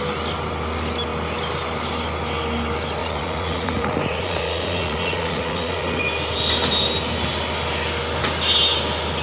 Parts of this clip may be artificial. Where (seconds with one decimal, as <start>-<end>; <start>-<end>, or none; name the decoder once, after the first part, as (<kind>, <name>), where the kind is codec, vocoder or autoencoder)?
3.0-6.0 (vocoder, Vocos)